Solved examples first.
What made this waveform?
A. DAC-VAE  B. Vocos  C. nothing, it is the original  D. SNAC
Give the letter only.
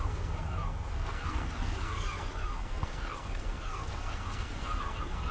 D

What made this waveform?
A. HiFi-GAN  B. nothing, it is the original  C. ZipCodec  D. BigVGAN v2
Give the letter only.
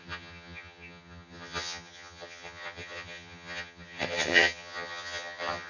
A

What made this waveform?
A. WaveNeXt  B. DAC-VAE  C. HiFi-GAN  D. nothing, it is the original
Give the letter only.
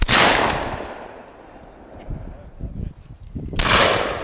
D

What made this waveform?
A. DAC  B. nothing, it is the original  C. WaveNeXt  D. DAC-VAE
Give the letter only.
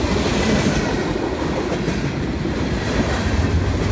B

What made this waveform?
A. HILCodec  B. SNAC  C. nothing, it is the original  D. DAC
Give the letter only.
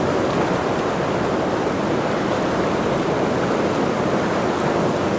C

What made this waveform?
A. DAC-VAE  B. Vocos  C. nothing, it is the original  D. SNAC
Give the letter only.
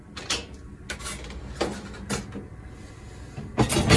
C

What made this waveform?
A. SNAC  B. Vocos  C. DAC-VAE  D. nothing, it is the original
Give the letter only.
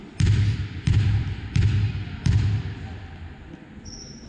D